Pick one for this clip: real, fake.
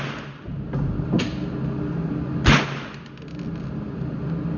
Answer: real